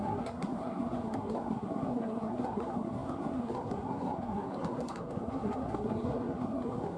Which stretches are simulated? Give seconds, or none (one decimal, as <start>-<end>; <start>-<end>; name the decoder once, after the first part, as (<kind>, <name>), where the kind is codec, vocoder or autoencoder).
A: 0.0-7.0 (codec, SNAC)